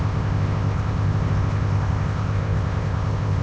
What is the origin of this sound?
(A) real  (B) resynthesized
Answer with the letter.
B